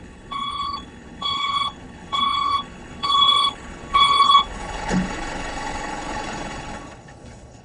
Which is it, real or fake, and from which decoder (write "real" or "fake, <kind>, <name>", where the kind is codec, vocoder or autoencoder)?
fake, codec, HILCodec